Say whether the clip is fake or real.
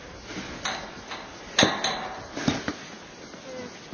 real